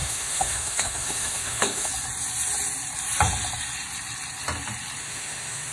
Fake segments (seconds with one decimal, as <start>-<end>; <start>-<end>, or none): 0.0-1.9; 5.0-5.7